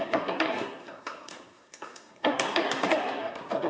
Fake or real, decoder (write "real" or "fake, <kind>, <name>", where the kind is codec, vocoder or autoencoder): fake, codec, SNAC